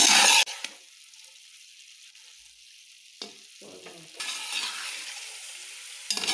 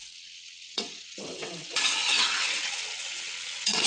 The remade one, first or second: second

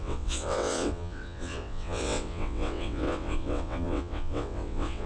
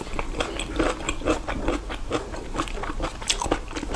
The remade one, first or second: first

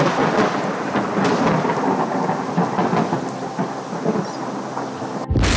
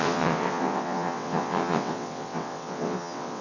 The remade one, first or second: second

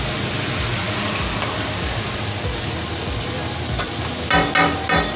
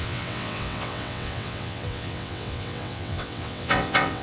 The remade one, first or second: second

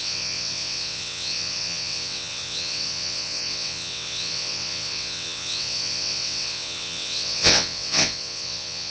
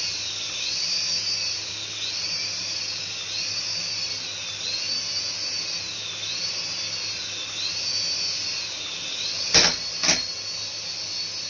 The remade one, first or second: first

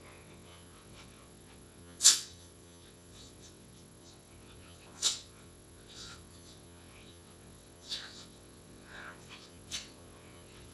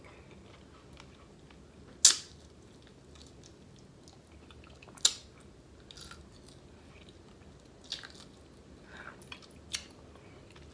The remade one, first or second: first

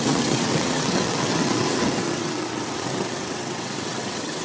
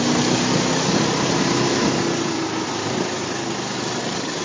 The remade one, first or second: first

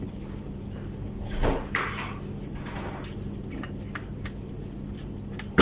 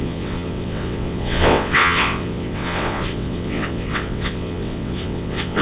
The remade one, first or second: second